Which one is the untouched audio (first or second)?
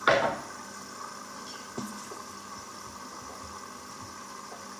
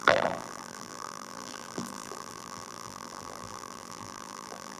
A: first